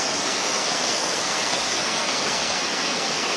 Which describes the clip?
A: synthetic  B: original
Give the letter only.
A